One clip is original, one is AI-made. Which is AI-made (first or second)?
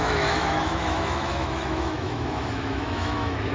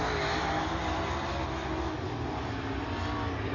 first